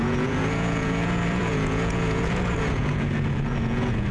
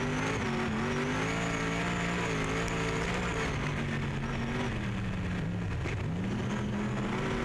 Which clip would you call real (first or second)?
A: second